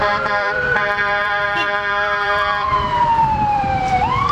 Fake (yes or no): yes